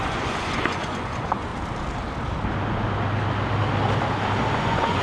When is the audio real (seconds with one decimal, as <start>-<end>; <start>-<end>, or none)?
1.5-4.5